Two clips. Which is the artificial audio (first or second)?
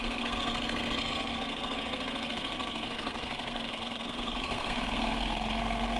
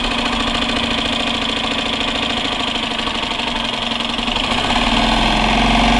first